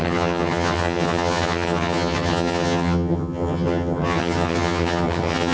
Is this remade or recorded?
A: remade